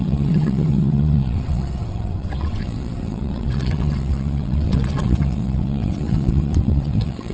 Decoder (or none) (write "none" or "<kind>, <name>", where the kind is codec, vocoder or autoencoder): vocoder, WaveNeXt